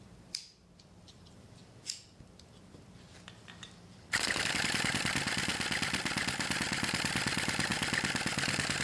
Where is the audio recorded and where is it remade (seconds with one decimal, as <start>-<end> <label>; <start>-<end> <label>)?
0.0-5.5 remade; 5.5-6.6 recorded; 6.6-7.7 remade; 7.7-8.8 recorded